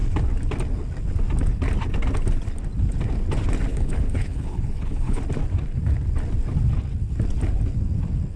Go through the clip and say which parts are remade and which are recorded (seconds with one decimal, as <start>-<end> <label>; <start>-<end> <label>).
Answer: 0.0-3.7 recorded; 3.7-5.2 remade; 5.2-8.4 recorded